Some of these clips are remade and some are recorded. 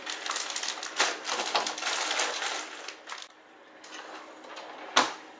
recorded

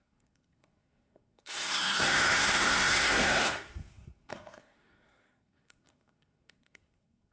remade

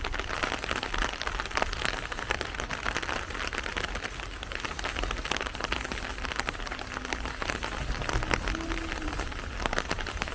recorded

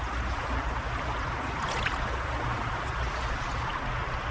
recorded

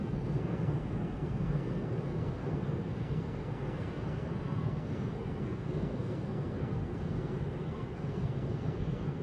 remade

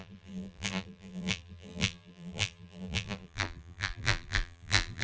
remade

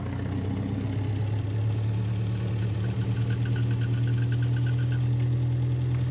recorded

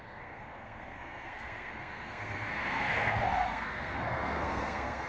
remade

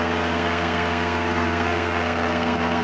remade